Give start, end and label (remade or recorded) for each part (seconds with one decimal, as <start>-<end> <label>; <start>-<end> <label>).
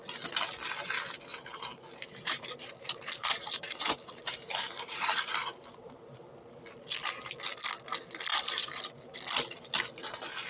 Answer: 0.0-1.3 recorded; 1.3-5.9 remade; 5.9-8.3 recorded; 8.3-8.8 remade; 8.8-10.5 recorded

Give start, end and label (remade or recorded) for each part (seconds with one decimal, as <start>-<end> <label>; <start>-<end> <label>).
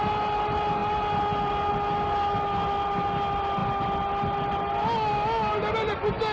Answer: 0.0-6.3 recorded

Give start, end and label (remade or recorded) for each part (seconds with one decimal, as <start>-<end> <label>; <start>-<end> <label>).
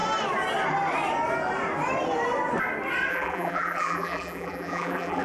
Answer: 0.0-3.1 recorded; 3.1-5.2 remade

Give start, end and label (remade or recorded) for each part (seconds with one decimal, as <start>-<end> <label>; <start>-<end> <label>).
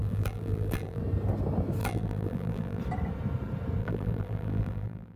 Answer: 0.0-1.0 remade; 1.0-1.8 recorded; 1.8-2.8 remade; 2.8-3.8 recorded; 3.8-5.2 remade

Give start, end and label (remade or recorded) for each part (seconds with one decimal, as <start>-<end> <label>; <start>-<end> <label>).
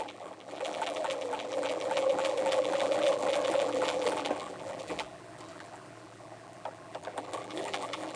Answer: 0.0-8.2 remade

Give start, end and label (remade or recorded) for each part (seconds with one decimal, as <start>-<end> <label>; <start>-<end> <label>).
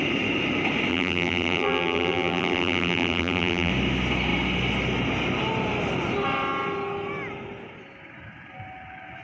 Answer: 0.0-0.9 recorded; 0.9-3.7 remade; 3.7-9.2 recorded